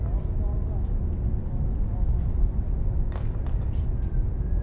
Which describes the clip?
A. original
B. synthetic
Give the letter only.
A